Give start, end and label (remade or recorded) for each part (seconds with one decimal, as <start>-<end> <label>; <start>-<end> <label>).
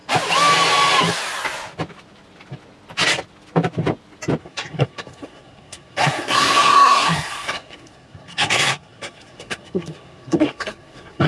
0.0-4.4 recorded; 4.4-11.3 remade